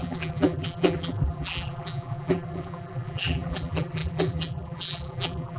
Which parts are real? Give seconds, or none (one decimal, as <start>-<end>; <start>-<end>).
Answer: none